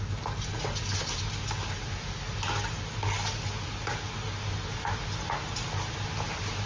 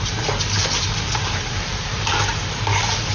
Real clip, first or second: first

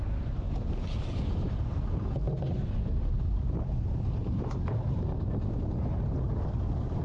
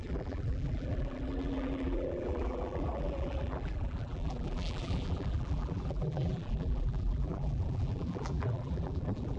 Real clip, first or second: first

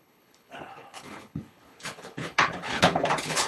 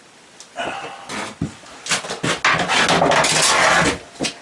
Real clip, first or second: second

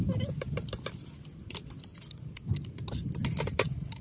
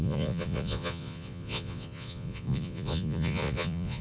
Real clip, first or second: first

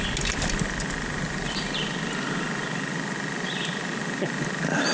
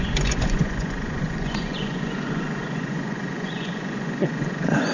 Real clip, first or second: first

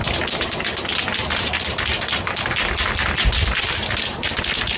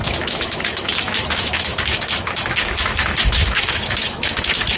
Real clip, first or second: first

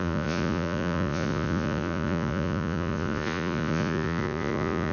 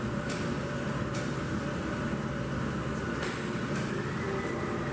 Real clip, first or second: second